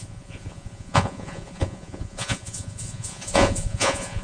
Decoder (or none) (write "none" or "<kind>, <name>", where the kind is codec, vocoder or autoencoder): vocoder, Vocos